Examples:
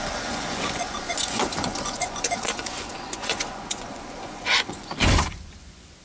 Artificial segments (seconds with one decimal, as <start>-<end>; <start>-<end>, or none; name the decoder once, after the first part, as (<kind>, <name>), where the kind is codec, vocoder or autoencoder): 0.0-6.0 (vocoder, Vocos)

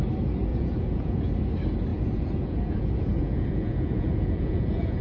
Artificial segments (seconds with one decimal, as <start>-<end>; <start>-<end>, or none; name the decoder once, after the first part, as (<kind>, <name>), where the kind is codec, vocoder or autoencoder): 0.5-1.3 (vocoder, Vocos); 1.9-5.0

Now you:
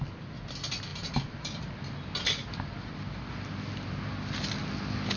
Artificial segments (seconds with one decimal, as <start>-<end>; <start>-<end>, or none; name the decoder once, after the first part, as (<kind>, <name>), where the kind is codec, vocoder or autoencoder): none

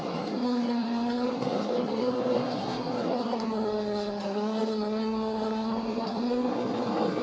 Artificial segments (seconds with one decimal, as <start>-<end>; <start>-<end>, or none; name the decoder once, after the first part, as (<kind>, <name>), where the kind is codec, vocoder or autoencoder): 0.0-7.2 (codec, SNAC)

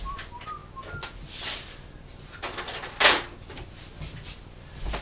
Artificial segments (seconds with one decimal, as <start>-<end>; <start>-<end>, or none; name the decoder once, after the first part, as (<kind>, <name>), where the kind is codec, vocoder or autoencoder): none